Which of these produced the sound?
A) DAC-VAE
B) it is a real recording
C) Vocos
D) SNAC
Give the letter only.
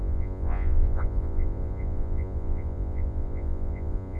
C